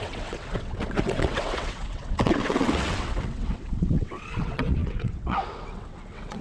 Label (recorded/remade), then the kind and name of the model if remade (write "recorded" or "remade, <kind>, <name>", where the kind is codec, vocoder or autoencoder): remade, vocoder, WaveNeXt